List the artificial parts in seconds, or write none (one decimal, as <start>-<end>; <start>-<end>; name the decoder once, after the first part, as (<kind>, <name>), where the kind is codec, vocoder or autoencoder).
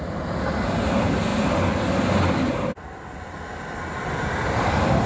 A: none